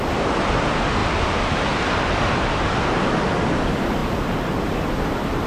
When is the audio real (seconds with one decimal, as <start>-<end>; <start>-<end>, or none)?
0.0-5.5